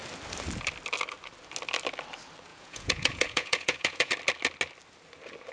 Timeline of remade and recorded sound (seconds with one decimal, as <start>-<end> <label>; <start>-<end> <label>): 0.0-2.5 recorded; 2.5-4.1 remade; 4.1-5.5 recorded